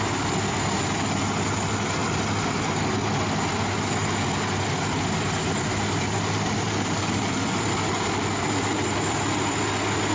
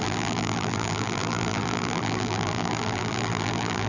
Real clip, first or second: first